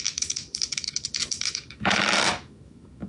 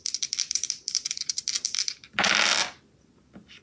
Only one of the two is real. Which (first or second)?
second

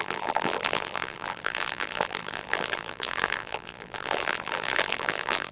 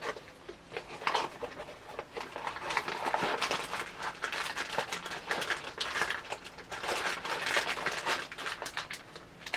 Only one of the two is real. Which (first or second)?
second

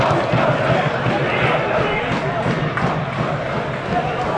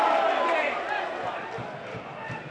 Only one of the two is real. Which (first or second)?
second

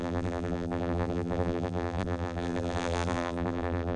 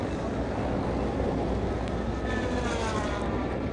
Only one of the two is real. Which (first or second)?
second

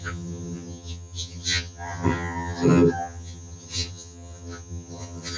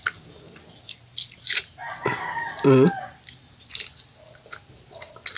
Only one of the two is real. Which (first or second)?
second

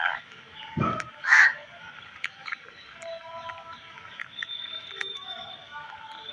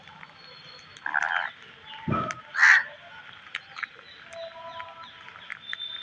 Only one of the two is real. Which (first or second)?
second